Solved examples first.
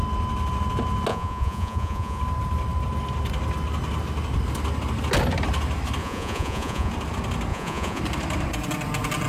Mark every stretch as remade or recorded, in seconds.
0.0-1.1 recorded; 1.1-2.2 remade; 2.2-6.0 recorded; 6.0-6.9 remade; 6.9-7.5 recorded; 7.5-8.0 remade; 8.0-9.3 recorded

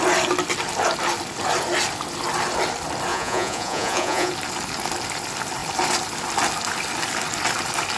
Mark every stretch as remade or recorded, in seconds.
0.0-3.1 recorded; 3.1-4.3 remade; 4.3-8.0 recorded

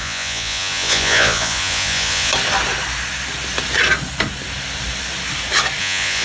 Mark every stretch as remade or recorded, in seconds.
0.0-2.3 remade; 2.3-5.8 recorded; 5.8-6.2 remade

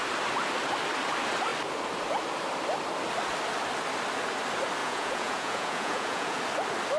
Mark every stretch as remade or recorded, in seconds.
0.0-4.8 recorded; 4.8-6.4 remade; 6.4-7.0 recorded